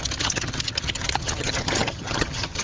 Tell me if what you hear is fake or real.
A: fake